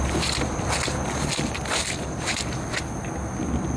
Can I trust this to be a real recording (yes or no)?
yes